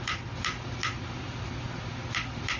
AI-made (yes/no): no